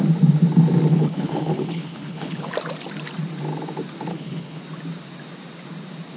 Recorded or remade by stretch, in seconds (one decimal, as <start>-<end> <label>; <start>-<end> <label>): 0.0-0.9 recorded; 0.9-2.5 remade; 2.5-4.1 recorded; 4.1-4.6 remade; 4.6-6.2 recorded